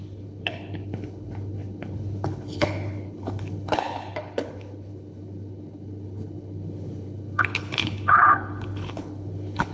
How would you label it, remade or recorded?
remade